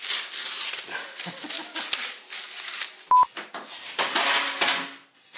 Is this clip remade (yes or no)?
no